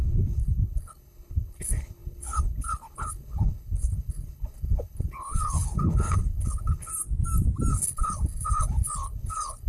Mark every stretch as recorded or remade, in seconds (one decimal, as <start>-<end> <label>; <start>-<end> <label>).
0.0-6.9 remade; 6.9-7.7 recorded; 7.7-9.7 remade